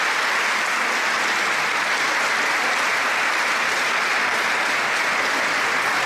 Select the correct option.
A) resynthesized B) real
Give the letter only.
B